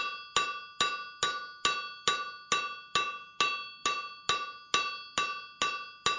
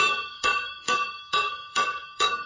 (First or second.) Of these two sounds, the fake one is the second